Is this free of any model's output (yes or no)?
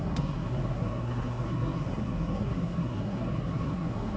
no